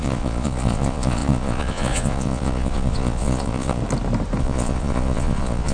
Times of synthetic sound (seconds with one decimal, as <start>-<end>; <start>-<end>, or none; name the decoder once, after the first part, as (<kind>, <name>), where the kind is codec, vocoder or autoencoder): 0.0-3.8 (vocoder, Vocos); 4.4-5.7